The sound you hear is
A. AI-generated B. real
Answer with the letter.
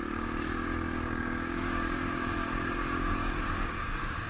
A